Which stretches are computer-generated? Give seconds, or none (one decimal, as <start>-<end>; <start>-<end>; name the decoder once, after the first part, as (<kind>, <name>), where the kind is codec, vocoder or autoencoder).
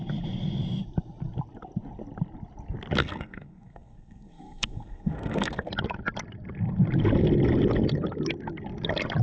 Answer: 3.0-5.7 (codec, SNAC)